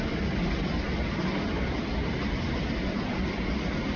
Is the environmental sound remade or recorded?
recorded